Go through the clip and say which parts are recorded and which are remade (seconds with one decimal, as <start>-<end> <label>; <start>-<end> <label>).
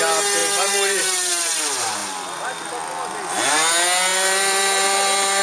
0.0-0.4 recorded; 0.4-1.3 remade; 1.3-2.0 recorded; 2.0-2.7 remade; 2.7-4.1 recorded; 4.1-5.4 remade